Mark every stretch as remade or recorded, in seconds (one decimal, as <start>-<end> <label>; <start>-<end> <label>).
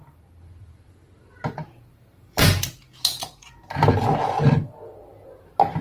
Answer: 0.0-3.5 remade; 3.5-5.8 recorded